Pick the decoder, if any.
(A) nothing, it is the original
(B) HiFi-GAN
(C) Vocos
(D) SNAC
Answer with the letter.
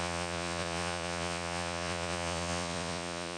C